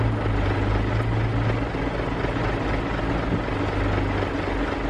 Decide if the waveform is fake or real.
real